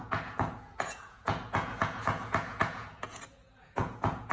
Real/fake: fake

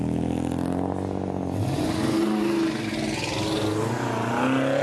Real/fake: real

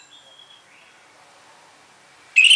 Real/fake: real